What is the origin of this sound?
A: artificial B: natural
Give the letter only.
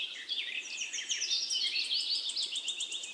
B